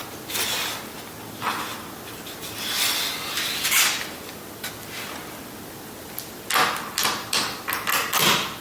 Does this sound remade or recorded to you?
recorded